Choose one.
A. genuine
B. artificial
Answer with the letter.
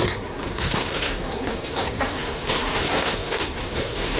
B